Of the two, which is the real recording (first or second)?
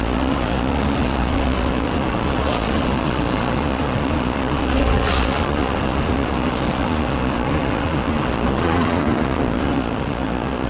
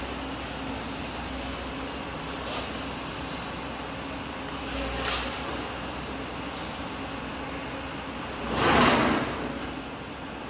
second